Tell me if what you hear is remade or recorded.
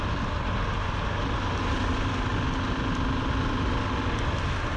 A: recorded